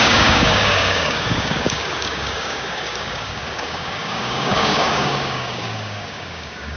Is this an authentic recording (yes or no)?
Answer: no